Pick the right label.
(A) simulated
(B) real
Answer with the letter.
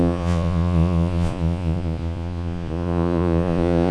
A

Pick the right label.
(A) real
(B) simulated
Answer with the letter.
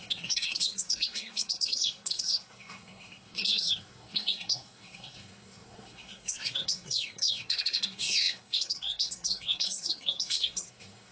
B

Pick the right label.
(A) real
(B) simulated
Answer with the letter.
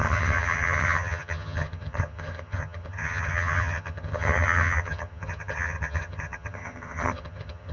B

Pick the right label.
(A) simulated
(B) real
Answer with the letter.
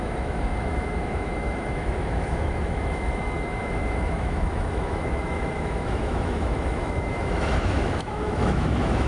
A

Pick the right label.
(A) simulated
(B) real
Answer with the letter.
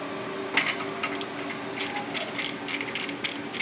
B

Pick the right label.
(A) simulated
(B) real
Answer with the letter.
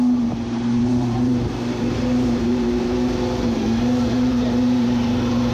A